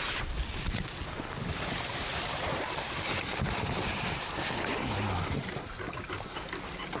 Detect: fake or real real